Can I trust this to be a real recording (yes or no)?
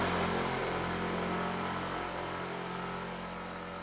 yes